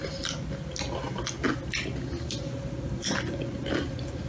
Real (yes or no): yes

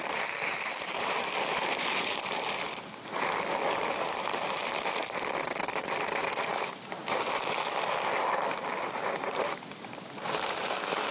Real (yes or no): no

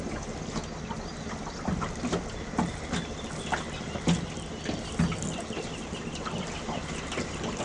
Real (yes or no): yes